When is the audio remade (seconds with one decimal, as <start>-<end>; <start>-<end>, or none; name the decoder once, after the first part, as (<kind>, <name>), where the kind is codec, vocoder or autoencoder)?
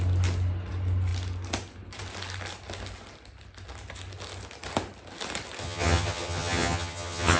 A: 5.6-7.4 (vocoder, HiFi-GAN)